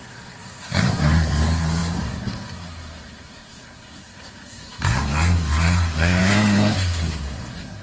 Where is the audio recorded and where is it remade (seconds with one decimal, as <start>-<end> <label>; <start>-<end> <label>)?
0.0-7.8 remade